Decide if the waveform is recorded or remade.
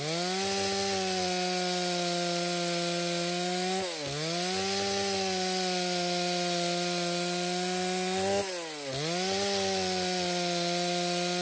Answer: recorded